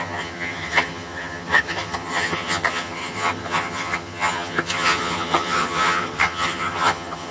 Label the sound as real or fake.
fake